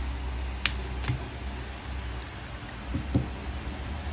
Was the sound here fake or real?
real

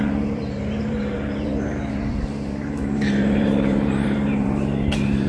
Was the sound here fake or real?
fake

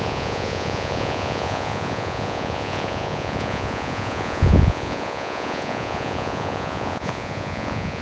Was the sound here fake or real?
fake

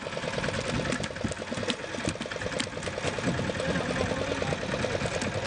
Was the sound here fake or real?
real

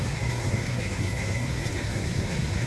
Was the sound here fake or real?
fake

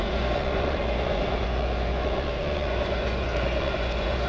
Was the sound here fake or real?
fake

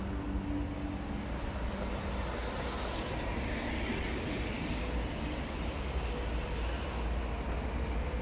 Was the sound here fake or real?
real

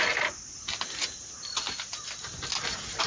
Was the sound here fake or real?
real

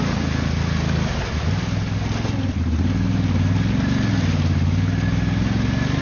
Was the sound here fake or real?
real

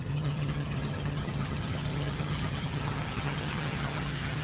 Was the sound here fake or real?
fake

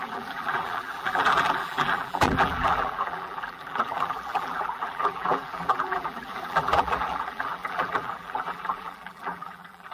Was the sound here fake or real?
fake